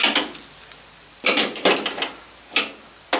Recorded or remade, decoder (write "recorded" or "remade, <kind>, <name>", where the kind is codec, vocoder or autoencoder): recorded